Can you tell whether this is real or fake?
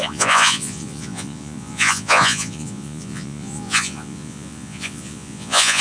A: fake